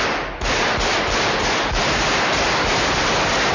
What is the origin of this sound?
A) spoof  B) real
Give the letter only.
B